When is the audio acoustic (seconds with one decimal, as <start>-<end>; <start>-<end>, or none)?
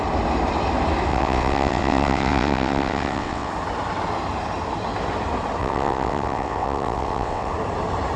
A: 0.0-1.1; 3.5-5.6; 7.5-8.2